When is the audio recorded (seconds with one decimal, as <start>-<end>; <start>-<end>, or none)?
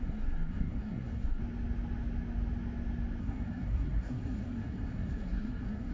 1.4-3.2